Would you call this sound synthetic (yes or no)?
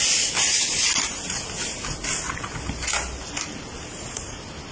no